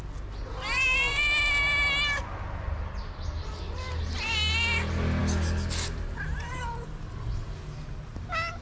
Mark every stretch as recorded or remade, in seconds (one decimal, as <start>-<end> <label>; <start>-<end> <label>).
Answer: 0.0-8.6 recorded